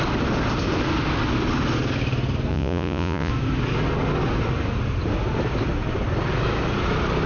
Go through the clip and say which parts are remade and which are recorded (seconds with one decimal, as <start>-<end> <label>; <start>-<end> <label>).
0.0-2.5 recorded; 2.5-3.3 remade; 3.3-7.3 recorded

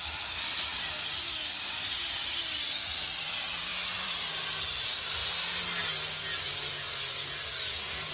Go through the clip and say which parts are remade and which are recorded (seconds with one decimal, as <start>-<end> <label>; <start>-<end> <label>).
0.0-5.2 remade; 5.2-8.1 recorded